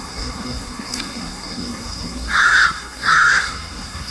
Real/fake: fake